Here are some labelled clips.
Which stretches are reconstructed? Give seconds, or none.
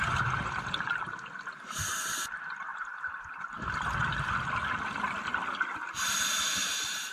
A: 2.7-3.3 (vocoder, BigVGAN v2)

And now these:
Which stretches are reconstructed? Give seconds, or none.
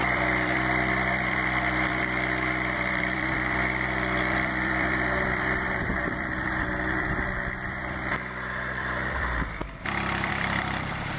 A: 0.0-11.2 (vocoder, BigVGAN v2)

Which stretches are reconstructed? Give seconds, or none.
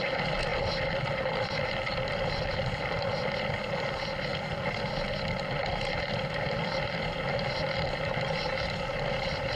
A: 4.3-4.9 (vocoder, BigVGAN v2)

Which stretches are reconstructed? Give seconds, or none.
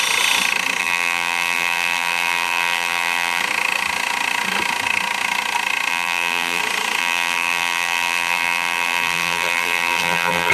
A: 0.8-3.4 (vocoder, BigVGAN v2); 5.9-6.6; 7.0-10.5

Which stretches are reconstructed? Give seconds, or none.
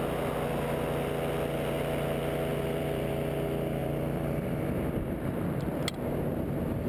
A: 2.5-3.1 (vocoder, BigVGAN v2); 3.8-5.7